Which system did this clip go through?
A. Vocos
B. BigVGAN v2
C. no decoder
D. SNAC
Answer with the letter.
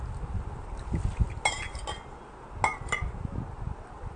C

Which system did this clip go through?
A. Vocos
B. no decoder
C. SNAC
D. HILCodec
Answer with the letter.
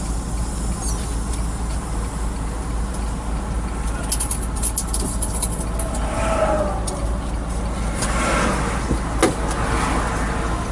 B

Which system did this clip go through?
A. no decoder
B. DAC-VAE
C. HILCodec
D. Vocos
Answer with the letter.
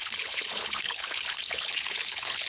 C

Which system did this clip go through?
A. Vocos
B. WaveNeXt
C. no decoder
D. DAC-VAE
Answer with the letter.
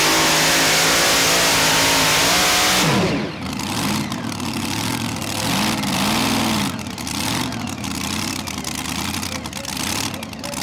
C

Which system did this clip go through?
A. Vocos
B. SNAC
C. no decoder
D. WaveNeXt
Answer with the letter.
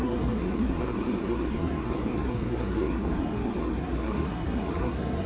B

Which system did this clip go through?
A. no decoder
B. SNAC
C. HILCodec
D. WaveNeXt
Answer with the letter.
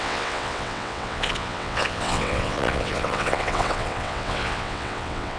D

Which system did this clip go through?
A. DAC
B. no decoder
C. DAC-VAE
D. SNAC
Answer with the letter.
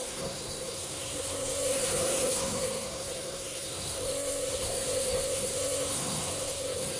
D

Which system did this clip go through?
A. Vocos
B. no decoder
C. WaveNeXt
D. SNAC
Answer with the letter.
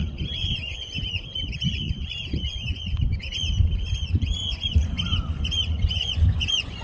A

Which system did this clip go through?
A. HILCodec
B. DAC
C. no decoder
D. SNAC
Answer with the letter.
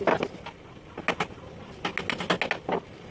C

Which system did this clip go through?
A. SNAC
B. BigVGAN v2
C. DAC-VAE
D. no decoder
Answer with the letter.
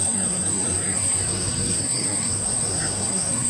A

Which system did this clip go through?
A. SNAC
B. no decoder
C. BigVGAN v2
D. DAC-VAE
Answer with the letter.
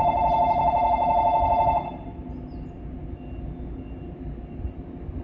B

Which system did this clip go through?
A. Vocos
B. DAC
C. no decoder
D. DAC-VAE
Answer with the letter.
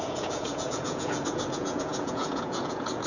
A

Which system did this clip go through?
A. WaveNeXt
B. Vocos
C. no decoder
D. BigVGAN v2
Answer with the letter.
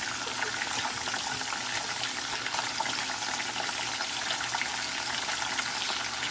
C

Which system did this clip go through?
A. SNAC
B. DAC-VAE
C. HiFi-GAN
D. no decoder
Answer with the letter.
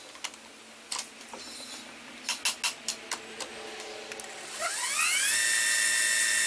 D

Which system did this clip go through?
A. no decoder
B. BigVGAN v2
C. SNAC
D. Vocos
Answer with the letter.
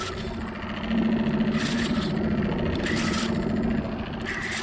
A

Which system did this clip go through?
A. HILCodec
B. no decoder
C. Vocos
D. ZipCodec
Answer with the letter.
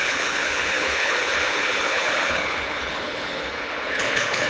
A